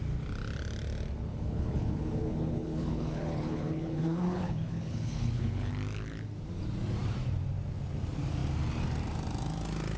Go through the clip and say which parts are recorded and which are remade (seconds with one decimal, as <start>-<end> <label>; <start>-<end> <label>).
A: 0.0-1.3 recorded; 1.3-5.7 remade; 5.7-10.0 recorded